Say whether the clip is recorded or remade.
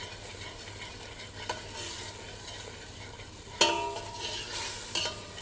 recorded